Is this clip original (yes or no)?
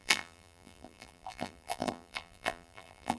no